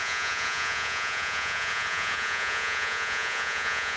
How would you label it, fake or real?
fake